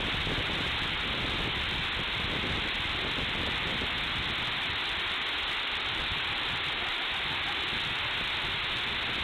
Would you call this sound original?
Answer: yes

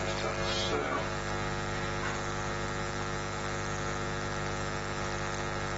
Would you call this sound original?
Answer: yes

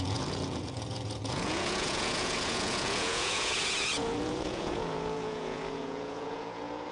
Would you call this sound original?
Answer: no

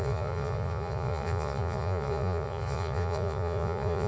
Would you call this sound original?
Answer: no